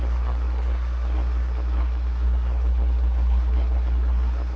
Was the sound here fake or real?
fake